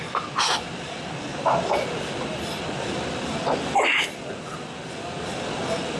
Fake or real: real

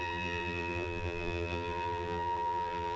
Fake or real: fake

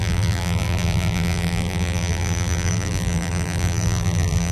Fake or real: fake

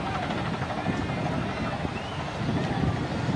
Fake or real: real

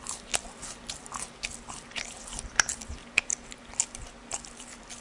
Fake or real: fake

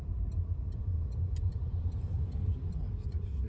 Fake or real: fake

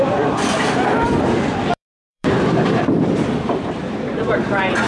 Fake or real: fake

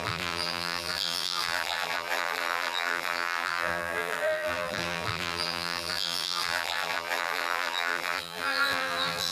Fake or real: fake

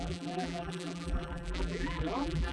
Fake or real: fake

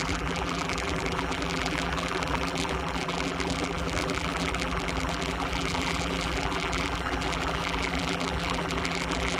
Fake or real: fake